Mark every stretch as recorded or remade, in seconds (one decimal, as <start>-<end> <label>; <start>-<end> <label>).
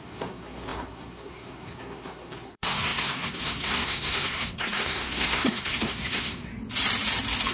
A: 0.0-6.5 remade; 6.5-7.5 recorded